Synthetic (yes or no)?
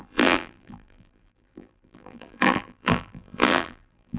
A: yes